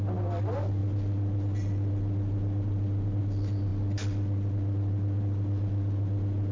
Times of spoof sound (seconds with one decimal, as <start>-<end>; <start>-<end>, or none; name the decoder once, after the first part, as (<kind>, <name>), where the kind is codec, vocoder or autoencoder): none

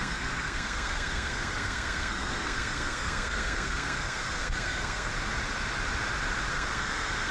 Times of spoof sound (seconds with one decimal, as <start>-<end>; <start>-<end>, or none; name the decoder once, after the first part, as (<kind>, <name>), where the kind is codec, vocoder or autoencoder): 0.0-5.1 (codec, SNAC); 6.5-7.3

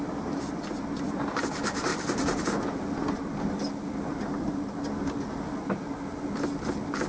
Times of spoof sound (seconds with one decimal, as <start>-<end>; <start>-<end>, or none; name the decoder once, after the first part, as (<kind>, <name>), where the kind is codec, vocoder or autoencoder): none

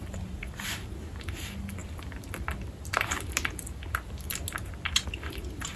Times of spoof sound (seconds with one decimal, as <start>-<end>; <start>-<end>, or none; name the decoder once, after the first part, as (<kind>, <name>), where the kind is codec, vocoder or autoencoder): none

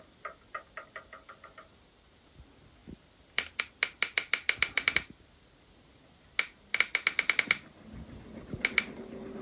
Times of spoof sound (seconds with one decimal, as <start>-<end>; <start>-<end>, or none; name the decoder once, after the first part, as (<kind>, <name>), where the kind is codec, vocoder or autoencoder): none

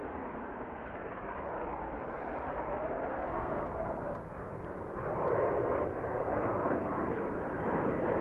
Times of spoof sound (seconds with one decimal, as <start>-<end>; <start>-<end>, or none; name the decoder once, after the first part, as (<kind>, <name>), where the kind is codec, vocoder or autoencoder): 0.0-1.1 (codec, SNAC); 3.1-4.3; 6.1-7.2

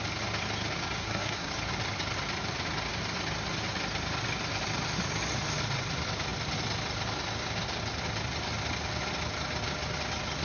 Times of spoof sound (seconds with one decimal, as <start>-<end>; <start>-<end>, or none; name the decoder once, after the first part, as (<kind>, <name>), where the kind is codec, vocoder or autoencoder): 1.0-1.5 (codec, SNAC)

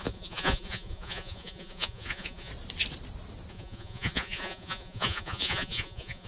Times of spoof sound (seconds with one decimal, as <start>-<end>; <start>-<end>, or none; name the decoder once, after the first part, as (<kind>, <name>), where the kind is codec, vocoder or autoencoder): 0.0-2.5 (vocoder, Vocos); 3.5-6.3